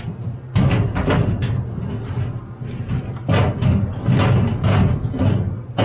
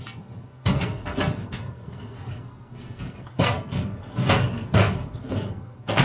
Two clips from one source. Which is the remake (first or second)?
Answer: second